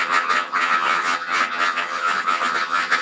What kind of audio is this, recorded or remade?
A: remade